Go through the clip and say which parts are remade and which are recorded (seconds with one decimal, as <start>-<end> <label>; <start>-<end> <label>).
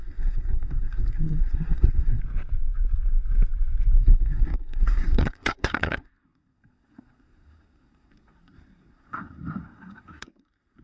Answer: 0.0-2.2 remade; 2.2-4.0 recorded; 4.0-10.8 remade